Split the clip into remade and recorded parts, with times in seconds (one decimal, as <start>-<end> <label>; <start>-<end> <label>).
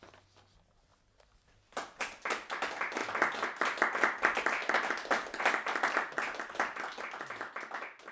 0.0-8.1 recorded